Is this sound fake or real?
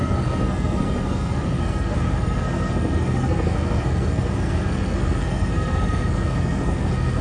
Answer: fake